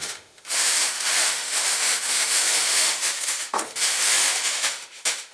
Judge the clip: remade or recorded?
remade